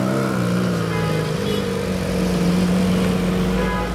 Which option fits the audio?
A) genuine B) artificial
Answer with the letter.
A